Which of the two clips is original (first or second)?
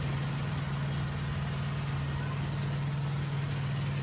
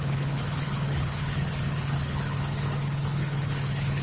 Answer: first